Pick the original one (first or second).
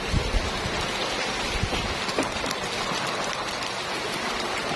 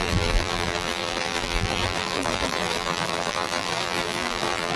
first